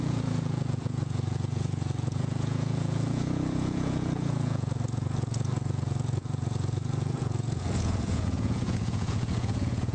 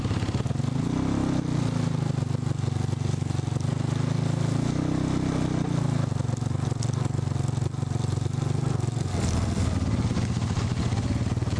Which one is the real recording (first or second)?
second